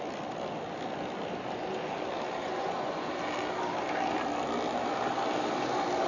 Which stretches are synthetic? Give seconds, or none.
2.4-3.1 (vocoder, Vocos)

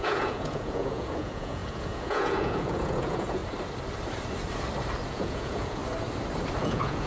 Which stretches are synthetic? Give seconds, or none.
0.0-3.4 (vocoder, Vocos); 5.1-5.8; 6.6-7.1

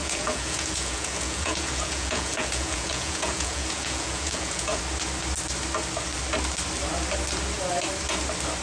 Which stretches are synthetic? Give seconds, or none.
0.0-4.8 (vocoder, Vocos)